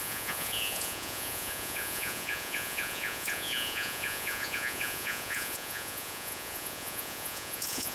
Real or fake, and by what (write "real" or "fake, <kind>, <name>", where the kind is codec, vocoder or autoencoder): fake, vocoder, Vocos